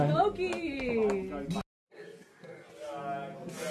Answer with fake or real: real